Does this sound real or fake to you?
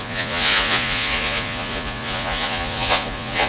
fake